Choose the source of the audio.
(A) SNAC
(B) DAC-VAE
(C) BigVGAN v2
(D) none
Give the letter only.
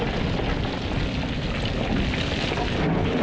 D